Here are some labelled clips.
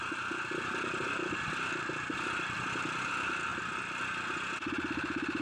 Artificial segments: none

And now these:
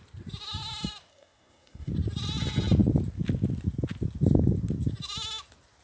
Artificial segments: 1.1-1.9